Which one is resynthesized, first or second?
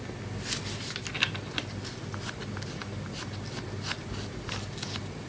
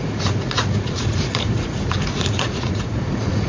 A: second